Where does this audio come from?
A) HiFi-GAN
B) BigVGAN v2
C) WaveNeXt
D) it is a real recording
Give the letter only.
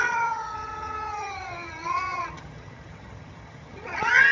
A